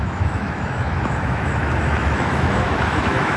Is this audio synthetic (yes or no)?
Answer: yes